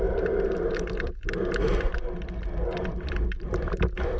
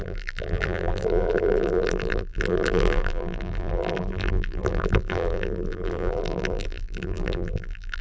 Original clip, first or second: first